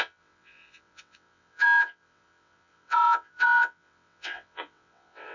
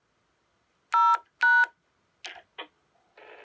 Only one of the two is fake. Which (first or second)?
first